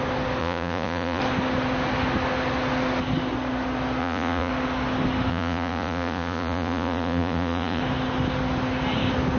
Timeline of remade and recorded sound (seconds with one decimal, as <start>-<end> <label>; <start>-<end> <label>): 0.0-0.4 recorded; 0.4-1.2 remade; 1.2-4.0 recorded; 4.0-4.5 remade; 4.5-5.3 recorded; 5.3-7.8 remade; 7.8-9.4 recorded